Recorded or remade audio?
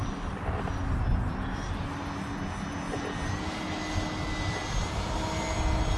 recorded